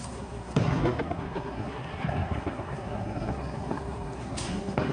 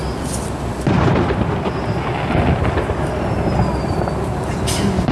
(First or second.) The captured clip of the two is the second